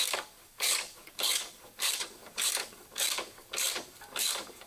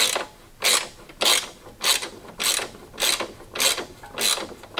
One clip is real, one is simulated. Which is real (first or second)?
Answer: second